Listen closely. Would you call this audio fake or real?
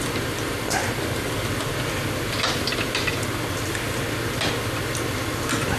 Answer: real